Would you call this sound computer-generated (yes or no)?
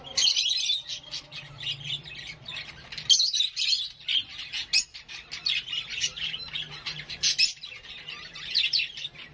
no